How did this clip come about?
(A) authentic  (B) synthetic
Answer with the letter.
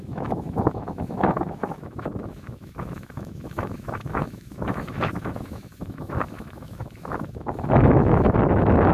B